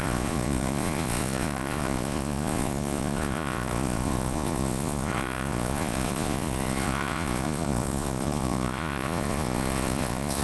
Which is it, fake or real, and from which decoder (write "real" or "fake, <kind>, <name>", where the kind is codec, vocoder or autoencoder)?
fake, vocoder, Vocos